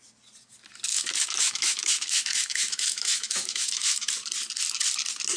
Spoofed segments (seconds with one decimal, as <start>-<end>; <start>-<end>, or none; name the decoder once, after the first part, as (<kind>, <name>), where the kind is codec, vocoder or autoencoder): 0.9-4.1 (autoencoder, DAC-VAE)